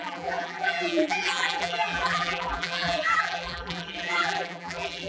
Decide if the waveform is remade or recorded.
remade